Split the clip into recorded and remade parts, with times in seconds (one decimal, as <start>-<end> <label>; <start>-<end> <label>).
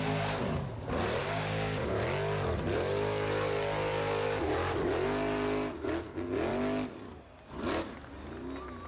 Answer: 0.0-1.2 recorded; 1.2-2.0 remade; 2.0-8.9 recorded